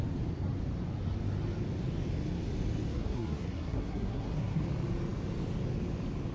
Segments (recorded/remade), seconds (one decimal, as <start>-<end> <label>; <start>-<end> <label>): 0.0-2.9 recorded; 2.9-4.6 remade; 4.6-6.3 recorded